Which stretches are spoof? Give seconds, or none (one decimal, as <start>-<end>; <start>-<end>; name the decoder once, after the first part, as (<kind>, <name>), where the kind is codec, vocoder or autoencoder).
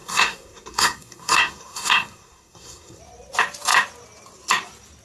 0.0-3.0 (codec, SNAC)